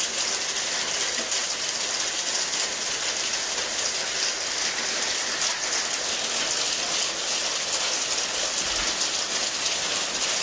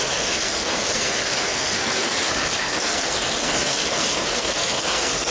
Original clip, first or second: first